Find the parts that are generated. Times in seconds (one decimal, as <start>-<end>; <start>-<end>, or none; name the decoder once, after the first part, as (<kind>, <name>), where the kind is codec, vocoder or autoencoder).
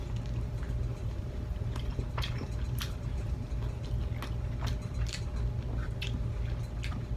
1.0-3.5 (vocoder, BigVGAN v2)